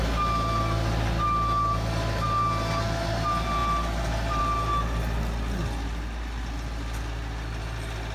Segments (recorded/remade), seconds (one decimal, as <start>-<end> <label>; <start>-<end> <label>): 0.0-8.1 recorded